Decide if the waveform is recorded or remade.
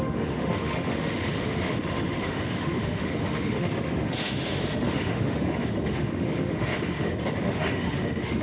remade